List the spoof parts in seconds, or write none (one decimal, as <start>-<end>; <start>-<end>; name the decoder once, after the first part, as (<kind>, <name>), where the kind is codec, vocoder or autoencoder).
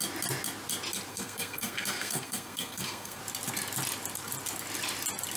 1.1-3.2 (codec, SNAC)